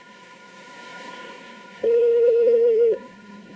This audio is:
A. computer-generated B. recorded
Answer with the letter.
A